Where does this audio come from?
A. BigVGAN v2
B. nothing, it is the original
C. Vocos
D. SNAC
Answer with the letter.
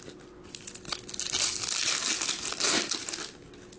B